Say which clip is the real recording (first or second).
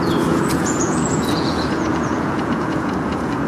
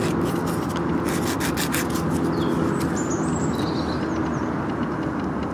second